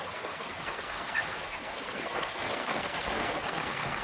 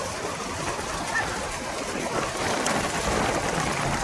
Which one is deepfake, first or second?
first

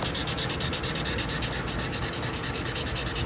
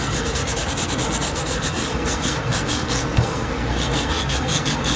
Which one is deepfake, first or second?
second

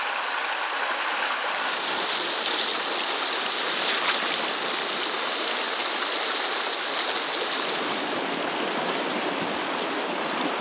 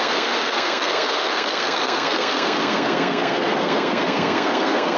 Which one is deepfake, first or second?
second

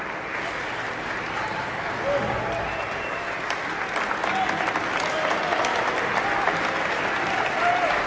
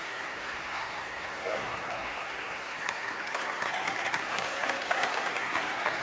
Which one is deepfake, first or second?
second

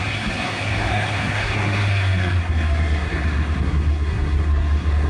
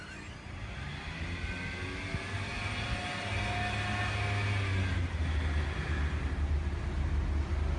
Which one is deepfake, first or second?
first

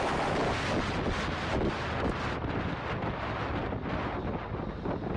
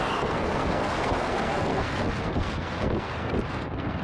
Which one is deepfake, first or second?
second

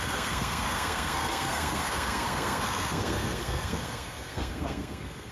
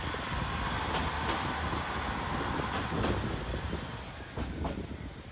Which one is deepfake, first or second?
first